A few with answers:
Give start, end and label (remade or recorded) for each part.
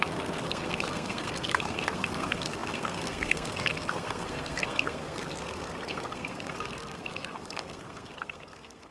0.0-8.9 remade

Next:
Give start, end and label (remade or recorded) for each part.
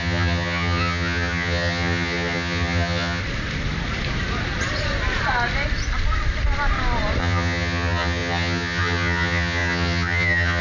0.0-3.2 remade; 3.2-7.2 recorded; 7.2-10.6 remade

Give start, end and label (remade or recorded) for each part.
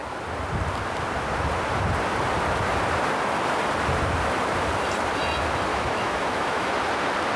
0.0-5.7 recorded; 5.7-6.7 remade; 6.7-7.4 recorded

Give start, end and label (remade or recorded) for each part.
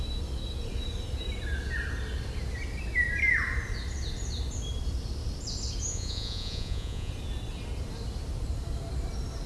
0.0-5.9 recorded; 5.9-7.1 remade; 7.1-9.5 recorded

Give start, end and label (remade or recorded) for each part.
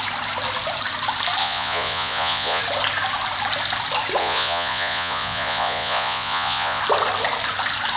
0.0-1.4 recorded; 1.4-2.6 remade; 2.6-4.2 recorded; 4.2-6.8 remade; 6.8-8.0 recorded